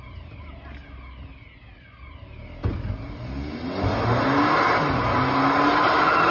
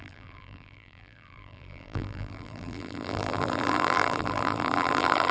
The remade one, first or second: second